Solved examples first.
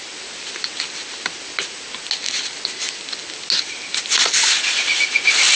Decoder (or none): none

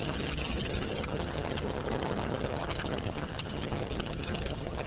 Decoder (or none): vocoder, HiFi-GAN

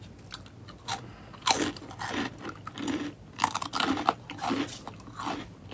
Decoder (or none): none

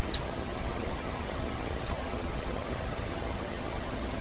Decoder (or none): vocoder, HiFi-GAN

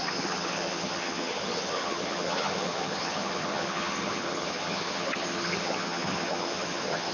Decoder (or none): vocoder, HiFi-GAN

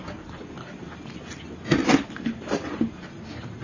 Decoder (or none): none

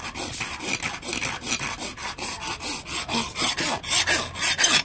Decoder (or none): none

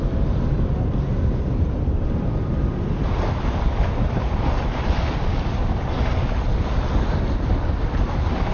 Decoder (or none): none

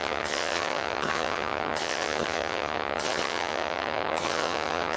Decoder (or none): vocoder, HiFi-GAN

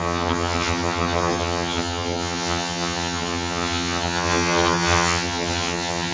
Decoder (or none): vocoder, HiFi-GAN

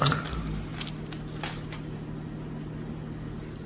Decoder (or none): none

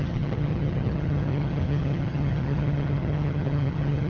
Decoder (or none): vocoder, HiFi-GAN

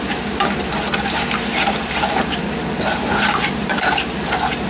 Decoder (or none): none